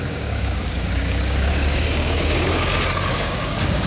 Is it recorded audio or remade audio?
remade